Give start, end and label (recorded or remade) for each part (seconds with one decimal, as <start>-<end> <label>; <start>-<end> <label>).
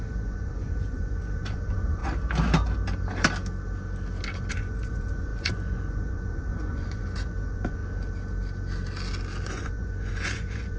0.0-2.0 remade; 2.0-4.5 recorded; 4.5-7.8 remade; 7.8-9.4 recorded; 9.4-10.8 remade